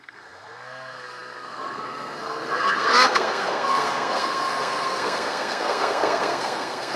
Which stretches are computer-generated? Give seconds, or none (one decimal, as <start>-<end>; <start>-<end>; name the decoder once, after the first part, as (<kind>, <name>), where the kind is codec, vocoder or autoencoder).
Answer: 0.0-7.0 (codec, SNAC)